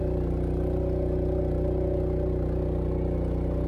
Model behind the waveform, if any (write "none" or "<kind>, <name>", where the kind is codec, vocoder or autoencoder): none